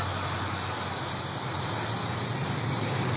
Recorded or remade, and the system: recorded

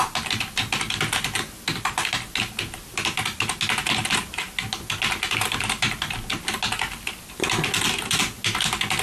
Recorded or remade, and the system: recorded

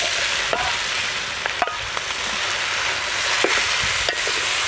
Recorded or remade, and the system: recorded